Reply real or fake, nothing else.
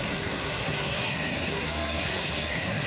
fake